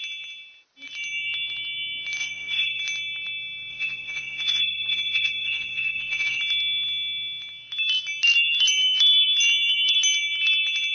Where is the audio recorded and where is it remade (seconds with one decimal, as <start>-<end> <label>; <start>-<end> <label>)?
0.0-2.2 recorded; 2.2-2.8 remade; 2.8-3.7 recorded; 3.7-6.4 remade; 6.4-10.9 recorded